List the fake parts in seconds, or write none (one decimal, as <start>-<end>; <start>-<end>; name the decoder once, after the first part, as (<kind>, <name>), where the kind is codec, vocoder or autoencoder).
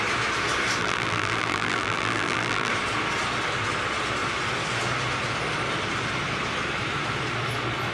0.8-2.7 (vocoder, BigVGAN v2)